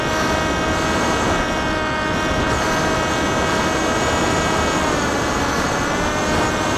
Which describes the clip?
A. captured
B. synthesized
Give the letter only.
A